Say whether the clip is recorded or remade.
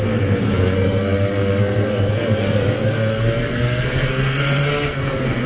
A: remade